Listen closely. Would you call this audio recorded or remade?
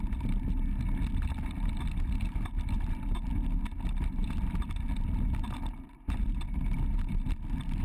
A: recorded